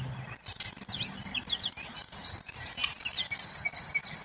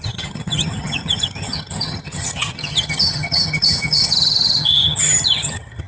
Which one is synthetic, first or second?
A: second